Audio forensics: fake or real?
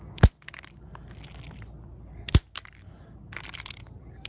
real